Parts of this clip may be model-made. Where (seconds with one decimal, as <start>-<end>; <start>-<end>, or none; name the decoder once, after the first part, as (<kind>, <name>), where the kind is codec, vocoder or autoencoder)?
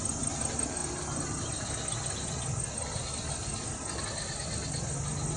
none